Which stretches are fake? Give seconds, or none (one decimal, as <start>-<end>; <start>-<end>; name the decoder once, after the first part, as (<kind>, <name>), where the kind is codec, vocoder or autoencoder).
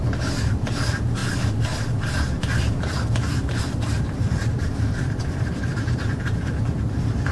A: 0.0-1.2 (vocoder, BigVGAN v2); 2.7-7.3